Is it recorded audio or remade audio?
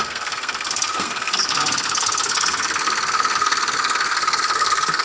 remade